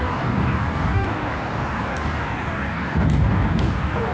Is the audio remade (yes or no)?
yes